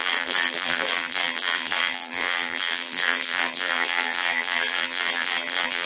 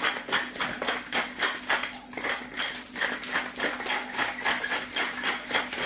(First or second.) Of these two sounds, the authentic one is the second